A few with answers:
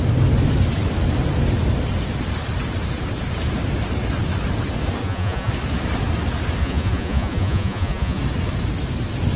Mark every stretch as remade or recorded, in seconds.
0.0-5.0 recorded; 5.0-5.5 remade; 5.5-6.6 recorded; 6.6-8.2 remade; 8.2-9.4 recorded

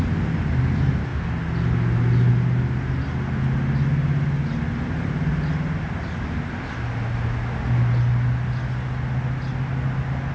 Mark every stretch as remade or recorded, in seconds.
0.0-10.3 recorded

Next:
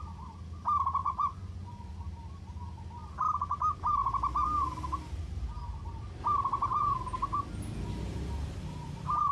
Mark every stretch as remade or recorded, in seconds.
0.0-1.0 recorded; 1.0-1.9 remade; 1.9-9.3 recorded

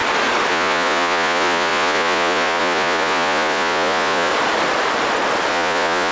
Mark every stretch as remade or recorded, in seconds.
0.0-0.5 recorded; 0.5-4.3 remade; 4.3-5.5 recorded; 5.5-6.1 remade

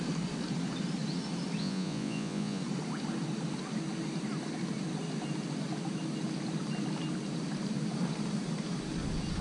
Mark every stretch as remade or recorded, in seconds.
0.0-1.6 recorded; 1.6-2.6 remade; 2.6-9.4 recorded

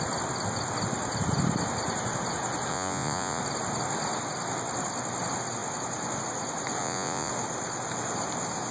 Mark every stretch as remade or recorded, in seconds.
0.0-2.7 recorded; 2.7-3.4 remade; 3.4-6.8 recorded; 6.8-7.3 remade; 7.3-8.7 recorded

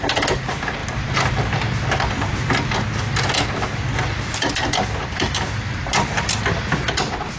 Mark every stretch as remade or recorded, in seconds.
0.0-7.4 recorded